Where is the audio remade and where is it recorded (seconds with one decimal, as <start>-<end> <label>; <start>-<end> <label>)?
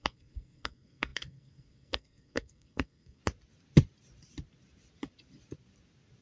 0.0-3.2 remade; 3.2-6.2 recorded